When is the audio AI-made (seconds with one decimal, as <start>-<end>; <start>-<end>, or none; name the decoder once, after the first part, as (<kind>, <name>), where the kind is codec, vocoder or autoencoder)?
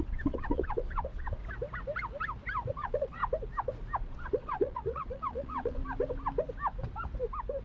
0.0-1.4 (vocoder, Vocos); 2.7-3.2; 4.0-5.8